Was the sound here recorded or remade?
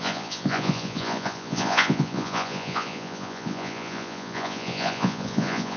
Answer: remade